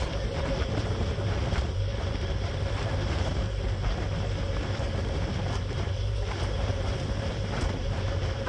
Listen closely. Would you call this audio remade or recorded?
remade